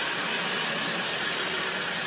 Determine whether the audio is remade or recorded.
recorded